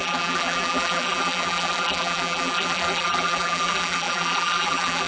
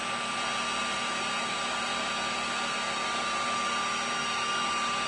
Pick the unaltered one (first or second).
second